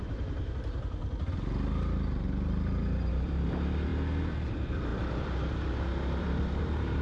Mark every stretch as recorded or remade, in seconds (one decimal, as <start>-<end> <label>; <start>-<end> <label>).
0.0-1.0 remade; 1.0-3.1 recorded; 3.1-3.9 remade; 3.9-4.5 recorded; 4.5-7.0 remade